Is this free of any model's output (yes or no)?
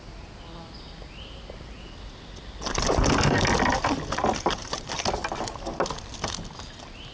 yes